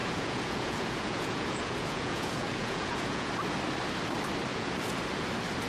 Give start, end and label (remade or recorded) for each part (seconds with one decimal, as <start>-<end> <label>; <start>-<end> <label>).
0.0-3.3 remade; 3.3-4.5 recorded; 4.5-5.0 remade; 5.0-5.7 recorded